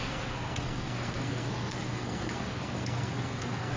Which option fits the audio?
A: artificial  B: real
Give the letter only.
A